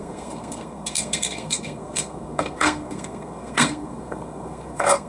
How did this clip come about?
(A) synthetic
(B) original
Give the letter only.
A